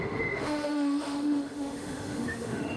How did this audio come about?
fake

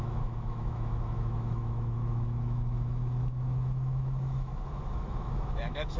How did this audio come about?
fake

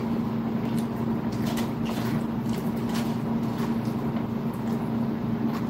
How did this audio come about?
real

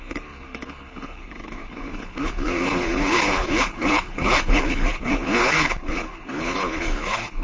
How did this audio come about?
fake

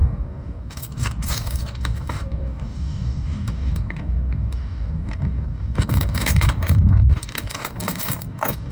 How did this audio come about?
fake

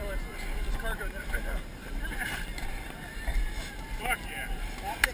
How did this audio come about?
fake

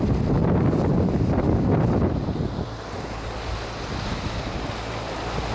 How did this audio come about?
real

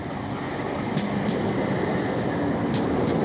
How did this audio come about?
real